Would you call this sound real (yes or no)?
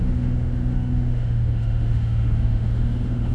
no